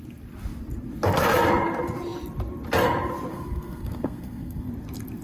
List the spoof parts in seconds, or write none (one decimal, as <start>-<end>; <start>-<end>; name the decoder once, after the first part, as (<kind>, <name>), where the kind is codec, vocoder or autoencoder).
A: 3.3-4.7 (codec, SNAC)